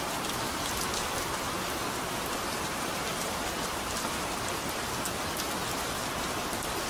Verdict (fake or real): real